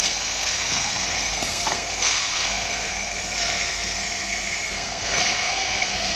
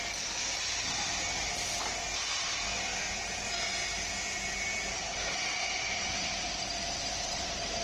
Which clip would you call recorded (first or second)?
second